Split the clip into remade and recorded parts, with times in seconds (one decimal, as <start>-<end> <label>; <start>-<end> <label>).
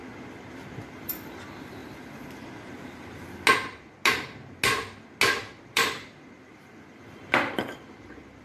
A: 0.0-0.9 recorded; 0.9-1.8 remade; 1.8-5.6 recorded; 5.6-8.4 remade